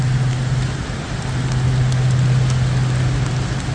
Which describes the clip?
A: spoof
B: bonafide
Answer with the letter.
B